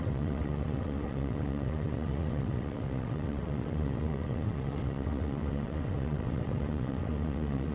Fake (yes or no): yes